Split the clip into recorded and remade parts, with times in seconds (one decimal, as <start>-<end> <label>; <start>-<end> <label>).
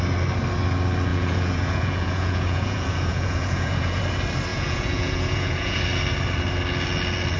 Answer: 0.0-1.1 recorded; 1.1-4.0 remade; 4.0-4.5 recorded; 4.5-5.8 remade; 5.8-7.4 recorded